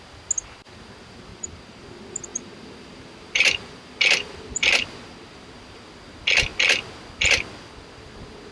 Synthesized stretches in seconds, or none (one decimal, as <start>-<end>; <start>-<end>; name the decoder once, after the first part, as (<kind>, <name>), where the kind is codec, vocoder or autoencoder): 1.3-1.8 (vocoder, BigVGAN v2); 2.3-5.9